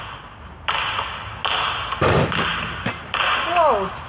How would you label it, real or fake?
real